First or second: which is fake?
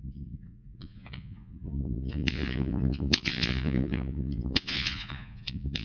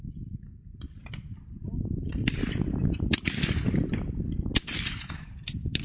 first